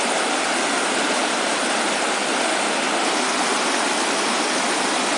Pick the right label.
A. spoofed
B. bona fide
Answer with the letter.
A